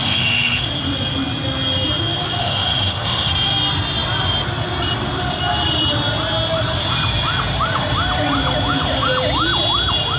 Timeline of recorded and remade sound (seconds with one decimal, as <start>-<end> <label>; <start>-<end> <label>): 0.0-0.7 remade; 0.7-2.4 recorded; 2.4-3.3 remade; 3.3-10.2 recorded